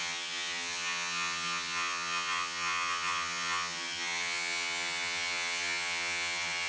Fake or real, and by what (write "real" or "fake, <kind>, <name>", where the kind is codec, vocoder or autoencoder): fake, vocoder, HiFi-GAN